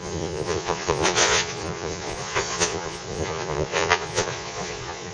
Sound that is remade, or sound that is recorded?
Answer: remade